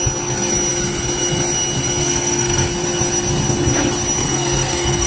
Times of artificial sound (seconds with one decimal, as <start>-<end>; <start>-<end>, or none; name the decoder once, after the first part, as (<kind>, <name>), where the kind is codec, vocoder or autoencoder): 2.0-2.7 (codec, SNAC); 4.2-5.1